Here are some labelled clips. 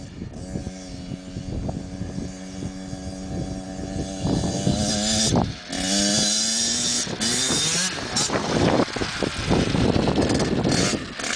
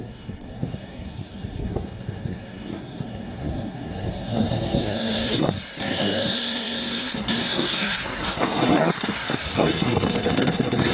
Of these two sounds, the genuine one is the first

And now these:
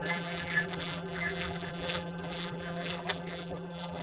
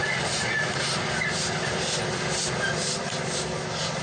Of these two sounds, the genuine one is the second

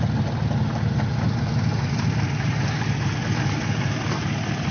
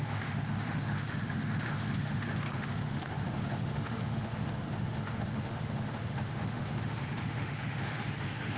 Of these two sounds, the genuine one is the first